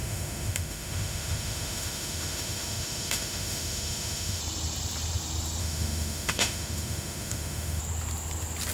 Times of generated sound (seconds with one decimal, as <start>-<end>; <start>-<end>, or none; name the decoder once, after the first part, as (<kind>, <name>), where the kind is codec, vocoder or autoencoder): 0.0-4.4 (autoencoder, DAC-VAE); 5.6-7.8